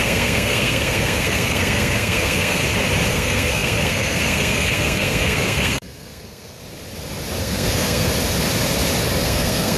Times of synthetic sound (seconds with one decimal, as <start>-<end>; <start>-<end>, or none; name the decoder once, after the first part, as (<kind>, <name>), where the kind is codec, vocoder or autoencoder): 0.0-2.6 (codec, SNAC); 3.1-6.6; 7.4-8.1; 9.2-9.8